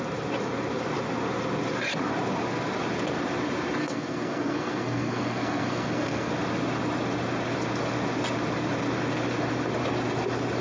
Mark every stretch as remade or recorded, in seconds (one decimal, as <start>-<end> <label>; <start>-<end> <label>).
0.0-3.8 recorded; 3.8-6.3 remade; 6.3-10.6 recorded